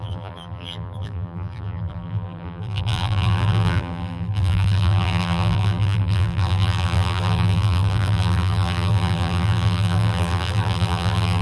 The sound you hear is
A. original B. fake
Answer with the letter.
B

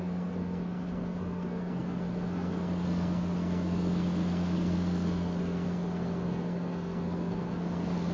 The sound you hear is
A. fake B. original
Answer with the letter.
A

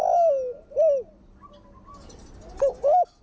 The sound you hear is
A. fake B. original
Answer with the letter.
B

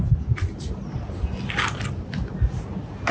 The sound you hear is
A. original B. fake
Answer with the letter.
A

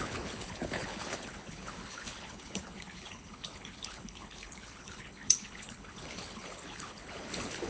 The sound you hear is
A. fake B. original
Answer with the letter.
A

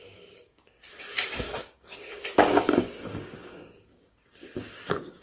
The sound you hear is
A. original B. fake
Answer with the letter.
B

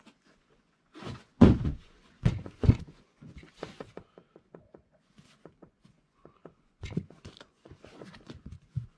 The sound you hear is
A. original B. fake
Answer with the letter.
B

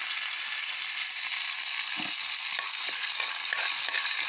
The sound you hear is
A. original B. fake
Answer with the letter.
A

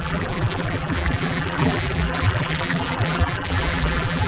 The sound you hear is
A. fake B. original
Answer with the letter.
A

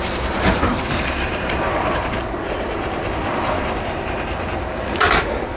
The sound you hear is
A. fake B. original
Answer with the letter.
B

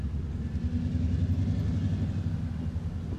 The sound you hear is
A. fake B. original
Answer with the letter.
B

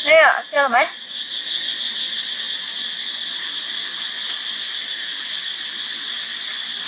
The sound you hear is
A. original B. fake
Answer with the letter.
A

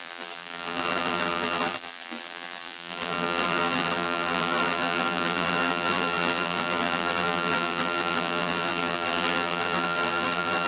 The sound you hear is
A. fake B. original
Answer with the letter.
A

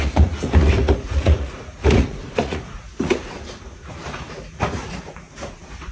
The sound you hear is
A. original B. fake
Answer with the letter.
B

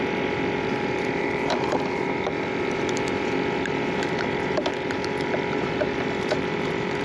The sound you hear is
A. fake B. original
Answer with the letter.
A